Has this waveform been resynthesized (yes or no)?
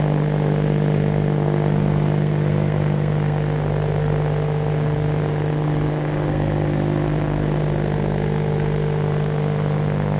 yes